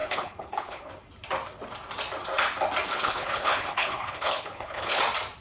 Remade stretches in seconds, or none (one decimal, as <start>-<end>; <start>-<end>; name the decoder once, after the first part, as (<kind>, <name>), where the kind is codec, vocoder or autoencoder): 0.0-0.9 (codec, HILCodec); 2.9-5.0